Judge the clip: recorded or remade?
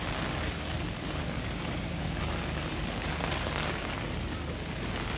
remade